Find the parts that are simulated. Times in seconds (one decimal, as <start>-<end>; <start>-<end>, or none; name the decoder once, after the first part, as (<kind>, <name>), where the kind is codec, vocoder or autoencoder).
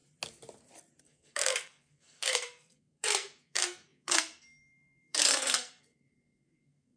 1.0-7.0 (codec, SNAC)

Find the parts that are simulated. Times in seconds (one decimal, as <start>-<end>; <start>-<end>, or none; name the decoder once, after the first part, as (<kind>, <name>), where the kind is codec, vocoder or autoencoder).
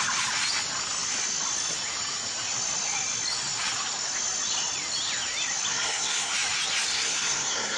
5.7-6.3 (codec, SNAC); 6.9-7.8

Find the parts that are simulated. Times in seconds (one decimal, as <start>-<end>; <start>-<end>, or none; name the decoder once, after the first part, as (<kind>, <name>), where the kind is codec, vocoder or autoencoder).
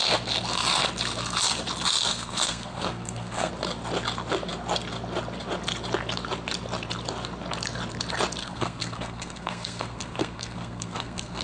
2.1-3.5 (codec, SNAC); 8.4-11.4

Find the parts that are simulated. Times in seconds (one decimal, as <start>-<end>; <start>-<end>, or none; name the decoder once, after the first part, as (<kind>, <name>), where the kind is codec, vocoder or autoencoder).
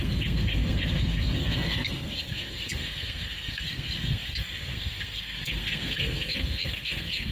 0.0-7.3 (codec, SNAC)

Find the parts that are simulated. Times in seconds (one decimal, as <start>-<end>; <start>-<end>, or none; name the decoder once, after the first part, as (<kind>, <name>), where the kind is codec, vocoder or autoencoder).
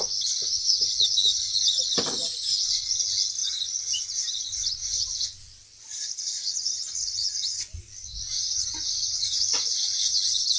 none